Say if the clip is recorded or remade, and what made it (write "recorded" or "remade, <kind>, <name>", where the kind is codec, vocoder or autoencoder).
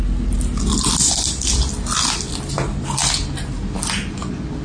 recorded